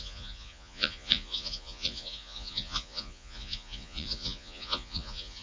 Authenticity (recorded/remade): remade